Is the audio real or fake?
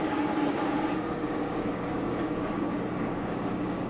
fake